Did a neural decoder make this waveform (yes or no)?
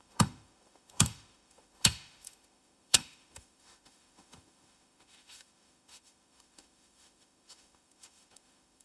yes